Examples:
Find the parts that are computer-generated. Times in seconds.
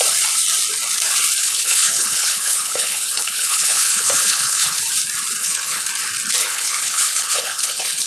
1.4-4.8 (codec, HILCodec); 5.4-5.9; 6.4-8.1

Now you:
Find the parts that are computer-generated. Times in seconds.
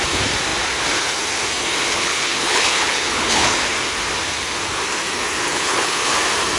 1.9-3.6 (codec, HILCodec); 5.5-6.1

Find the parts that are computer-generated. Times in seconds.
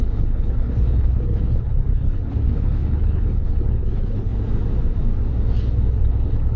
0.0-4.3 (codec, HILCodec); 6.0-6.6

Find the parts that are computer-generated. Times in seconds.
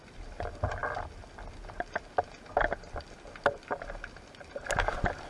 none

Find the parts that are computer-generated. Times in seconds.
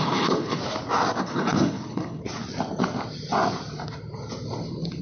0.0-0.6 (codec, HILCodec); 1.2-2.2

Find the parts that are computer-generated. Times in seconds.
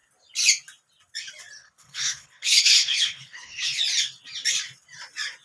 1.6-3.8 (codec, HILCodec)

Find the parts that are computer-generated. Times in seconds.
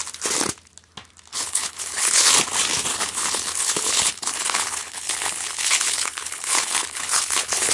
1.3-2.3 (codec, HILCodec); 2.9-7.7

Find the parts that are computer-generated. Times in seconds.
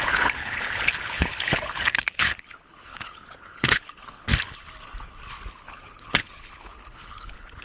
0.0-4.3 (codec, HILCodec); 5.5-7.6